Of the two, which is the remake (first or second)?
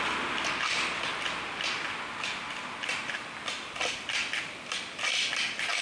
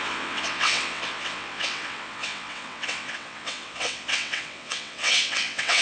second